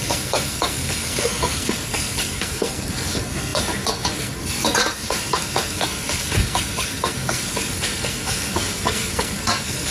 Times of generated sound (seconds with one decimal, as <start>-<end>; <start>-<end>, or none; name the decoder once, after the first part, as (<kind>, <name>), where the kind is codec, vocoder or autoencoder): 0.0-9.9 (codec, SNAC)